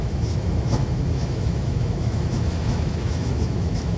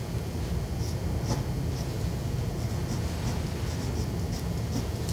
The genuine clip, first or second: second